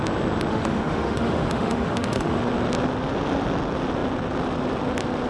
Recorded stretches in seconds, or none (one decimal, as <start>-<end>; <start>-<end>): 0.0-0.5; 2.4-5.3